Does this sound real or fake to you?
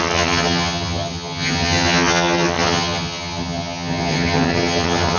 fake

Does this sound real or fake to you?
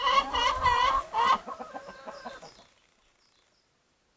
real